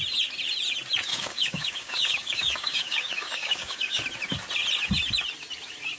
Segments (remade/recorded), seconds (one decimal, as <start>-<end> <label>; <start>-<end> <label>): 0.0-1.1 recorded; 1.1-4.0 remade; 4.0-6.0 recorded